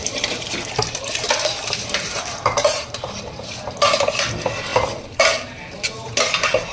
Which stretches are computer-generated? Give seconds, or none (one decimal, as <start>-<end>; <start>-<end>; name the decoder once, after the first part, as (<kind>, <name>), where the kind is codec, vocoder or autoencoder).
0.0-3.5 (vocoder, BigVGAN v2)